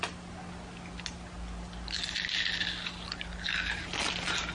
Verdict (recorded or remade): recorded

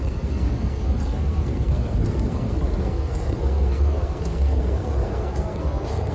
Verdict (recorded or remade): remade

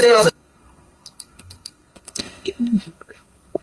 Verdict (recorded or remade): remade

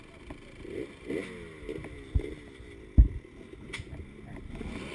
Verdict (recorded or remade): recorded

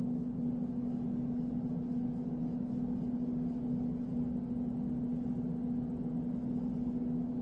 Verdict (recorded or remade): recorded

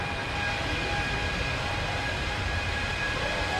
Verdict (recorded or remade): recorded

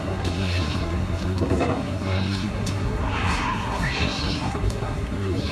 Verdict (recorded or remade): remade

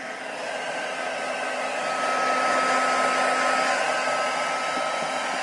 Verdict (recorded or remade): recorded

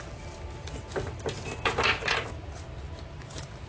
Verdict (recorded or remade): recorded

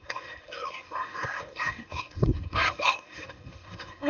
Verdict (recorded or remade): remade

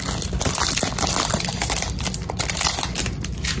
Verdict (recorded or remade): recorded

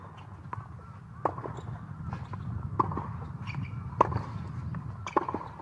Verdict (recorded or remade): recorded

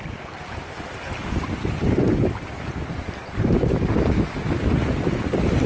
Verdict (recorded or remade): recorded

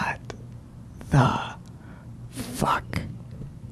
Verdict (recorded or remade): recorded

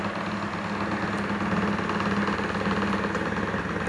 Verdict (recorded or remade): recorded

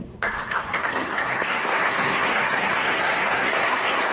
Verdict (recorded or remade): remade